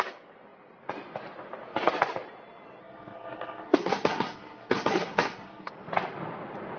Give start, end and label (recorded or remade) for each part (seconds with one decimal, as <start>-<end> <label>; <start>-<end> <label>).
0.0-2.8 recorded; 2.8-5.7 remade; 5.7-6.8 recorded